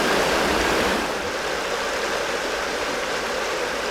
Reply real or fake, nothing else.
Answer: real